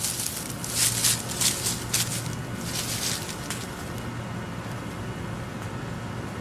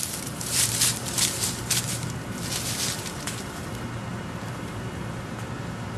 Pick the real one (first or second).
first